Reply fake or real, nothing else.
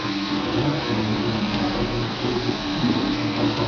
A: fake